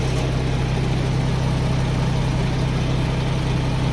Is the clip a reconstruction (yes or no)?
no